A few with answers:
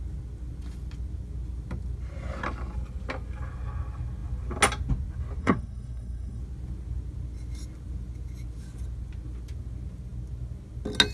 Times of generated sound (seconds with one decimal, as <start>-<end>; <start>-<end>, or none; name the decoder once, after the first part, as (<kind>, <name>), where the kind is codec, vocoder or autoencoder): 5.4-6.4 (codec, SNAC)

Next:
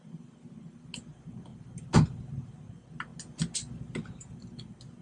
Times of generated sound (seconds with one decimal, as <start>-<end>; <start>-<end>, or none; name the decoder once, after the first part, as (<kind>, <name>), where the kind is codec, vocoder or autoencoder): none

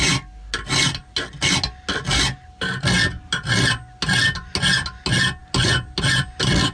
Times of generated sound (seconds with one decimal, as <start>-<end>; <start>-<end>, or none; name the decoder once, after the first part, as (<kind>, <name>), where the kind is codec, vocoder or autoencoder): none